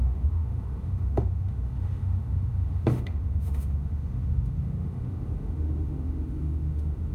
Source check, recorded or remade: remade